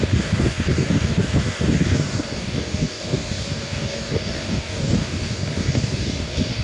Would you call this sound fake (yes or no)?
yes